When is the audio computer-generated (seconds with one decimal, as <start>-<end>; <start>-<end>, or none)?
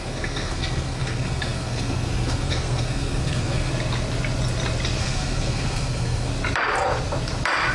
0.0-3.7; 5.0-6.3